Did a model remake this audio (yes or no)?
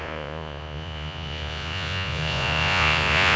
yes